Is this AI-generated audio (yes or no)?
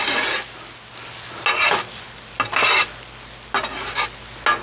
no